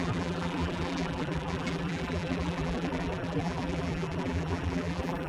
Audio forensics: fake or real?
fake